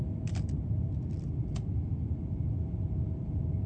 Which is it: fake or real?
fake